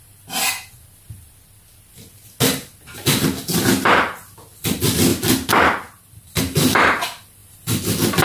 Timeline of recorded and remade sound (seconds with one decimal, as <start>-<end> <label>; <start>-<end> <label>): 0.0-8.2 recorded